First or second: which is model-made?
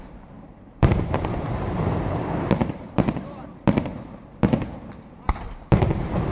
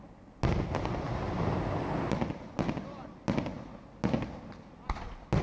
first